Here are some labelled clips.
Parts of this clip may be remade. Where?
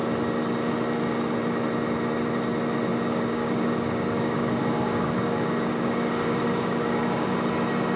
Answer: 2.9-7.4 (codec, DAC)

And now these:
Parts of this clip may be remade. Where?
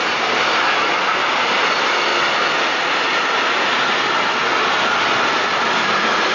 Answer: none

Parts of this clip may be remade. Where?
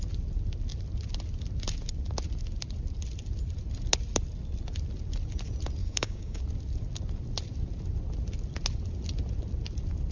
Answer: 5.8-6.4 (codec, DAC)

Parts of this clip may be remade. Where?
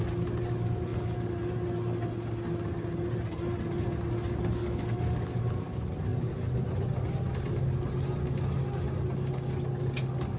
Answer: 4.6-5.3 (codec, DAC)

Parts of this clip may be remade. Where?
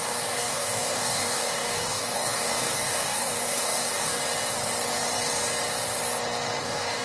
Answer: 0.0-4.2 (codec, DAC); 6.6-7.0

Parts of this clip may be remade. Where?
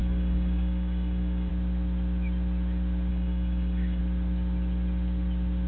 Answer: 0.0-1.5 (codec, DAC); 3.1-4.0